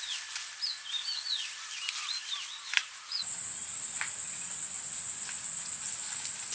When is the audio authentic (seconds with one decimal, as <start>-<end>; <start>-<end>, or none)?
0.0-2.8; 4.3-6.5